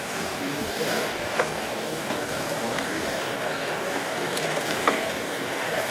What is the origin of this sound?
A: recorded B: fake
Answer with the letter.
B